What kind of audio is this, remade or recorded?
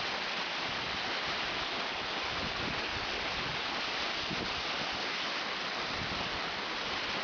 recorded